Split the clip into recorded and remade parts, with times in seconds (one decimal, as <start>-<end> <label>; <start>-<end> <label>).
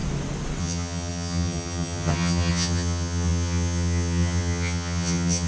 0.0-0.6 recorded; 0.6-5.5 remade